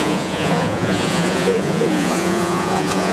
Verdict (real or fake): fake